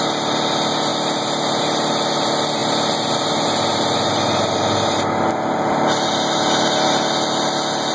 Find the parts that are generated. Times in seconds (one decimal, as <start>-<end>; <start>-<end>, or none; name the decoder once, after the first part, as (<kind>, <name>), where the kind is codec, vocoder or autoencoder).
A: none